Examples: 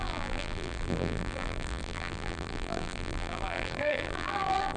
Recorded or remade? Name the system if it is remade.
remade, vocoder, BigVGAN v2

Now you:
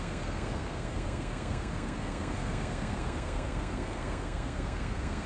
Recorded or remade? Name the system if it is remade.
remade, codec, SNAC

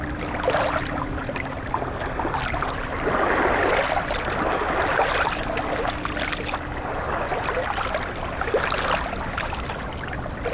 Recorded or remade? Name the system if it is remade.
recorded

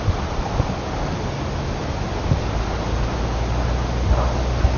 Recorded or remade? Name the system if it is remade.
recorded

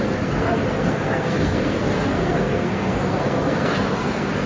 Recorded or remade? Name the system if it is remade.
remade, codec, SNAC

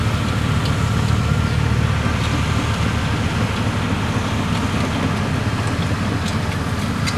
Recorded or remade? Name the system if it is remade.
recorded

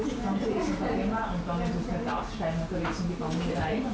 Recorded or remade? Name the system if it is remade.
recorded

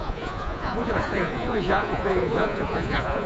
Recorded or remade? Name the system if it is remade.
remade, vocoder, Vocos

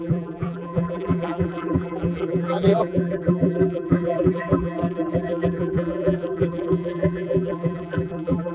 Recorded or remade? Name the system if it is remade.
remade, vocoder, BigVGAN v2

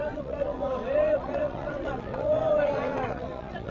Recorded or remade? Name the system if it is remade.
remade, vocoder, WaveNeXt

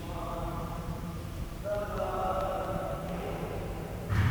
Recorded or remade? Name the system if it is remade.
remade, vocoder, BigVGAN v2